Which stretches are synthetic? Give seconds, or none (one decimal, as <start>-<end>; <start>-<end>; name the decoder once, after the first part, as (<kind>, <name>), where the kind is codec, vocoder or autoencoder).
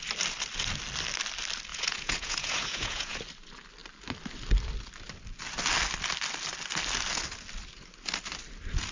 1.7-3.2 (vocoder, Vocos)